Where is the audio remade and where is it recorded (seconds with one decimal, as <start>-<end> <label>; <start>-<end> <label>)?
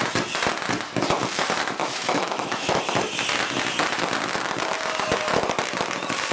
0.0-1.8 recorded; 1.8-2.8 remade; 2.8-6.3 recorded